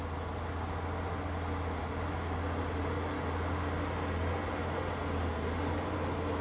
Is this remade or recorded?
recorded